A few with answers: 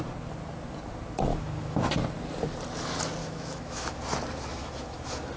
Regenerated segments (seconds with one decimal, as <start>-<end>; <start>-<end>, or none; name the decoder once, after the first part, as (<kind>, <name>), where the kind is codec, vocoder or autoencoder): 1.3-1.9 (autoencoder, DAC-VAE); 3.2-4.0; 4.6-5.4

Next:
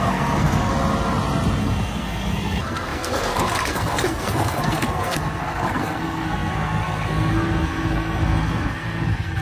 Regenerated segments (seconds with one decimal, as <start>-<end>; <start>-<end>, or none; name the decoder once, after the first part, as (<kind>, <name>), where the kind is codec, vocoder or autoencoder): 0.0-0.7 (codec, SNAC); 1.6-9.4

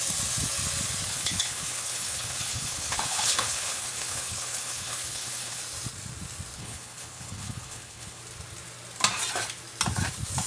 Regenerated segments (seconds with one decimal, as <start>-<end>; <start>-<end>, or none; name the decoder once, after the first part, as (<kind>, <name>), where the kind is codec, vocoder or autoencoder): 1.1-5.6 (codec, HILCodec); 6.5-8.2

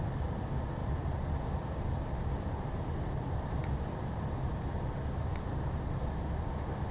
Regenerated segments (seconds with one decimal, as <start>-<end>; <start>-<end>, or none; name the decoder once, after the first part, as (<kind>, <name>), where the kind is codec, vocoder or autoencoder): 0.8-4.9 (vocoder, BigVGAN v2)

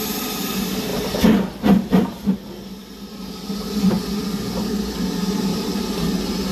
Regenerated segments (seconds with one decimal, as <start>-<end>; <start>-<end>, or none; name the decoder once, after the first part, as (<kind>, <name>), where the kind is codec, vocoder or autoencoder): none

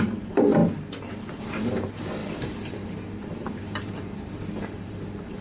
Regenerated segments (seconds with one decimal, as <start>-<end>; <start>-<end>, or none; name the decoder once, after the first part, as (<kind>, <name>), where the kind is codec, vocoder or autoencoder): 0.0-0.6 (vocoder, BigVGAN v2); 1.4-5.4

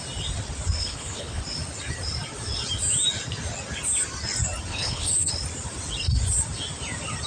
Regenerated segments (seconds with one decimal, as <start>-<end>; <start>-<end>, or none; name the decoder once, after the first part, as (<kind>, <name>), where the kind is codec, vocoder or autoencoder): 0.8-1.4 (codec, HILCodec); 4.7-5.3